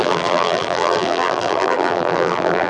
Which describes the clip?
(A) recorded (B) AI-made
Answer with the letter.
B